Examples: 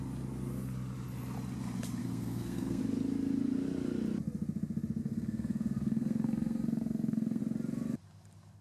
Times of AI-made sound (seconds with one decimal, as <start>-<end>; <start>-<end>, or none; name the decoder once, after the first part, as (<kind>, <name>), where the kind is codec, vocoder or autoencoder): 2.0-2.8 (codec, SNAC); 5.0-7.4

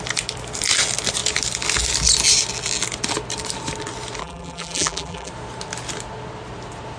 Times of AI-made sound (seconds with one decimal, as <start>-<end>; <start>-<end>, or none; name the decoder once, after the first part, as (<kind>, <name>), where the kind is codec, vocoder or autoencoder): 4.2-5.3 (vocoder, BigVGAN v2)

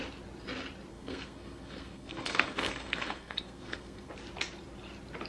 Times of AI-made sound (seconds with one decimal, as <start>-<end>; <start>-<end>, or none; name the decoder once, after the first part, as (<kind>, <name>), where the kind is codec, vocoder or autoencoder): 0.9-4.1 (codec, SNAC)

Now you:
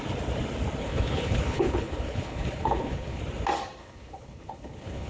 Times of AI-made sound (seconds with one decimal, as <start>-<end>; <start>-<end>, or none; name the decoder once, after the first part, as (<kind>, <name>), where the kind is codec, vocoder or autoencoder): 0.8-3.2 (codec, HILCodec); 3.8-5.1